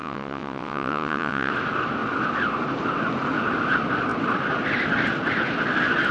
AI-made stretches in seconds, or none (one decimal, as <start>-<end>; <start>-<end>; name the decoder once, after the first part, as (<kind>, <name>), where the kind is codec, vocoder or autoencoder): 0.0-1.5 (vocoder, WaveNeXt)